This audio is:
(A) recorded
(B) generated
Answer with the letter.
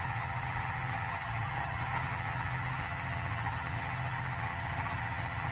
B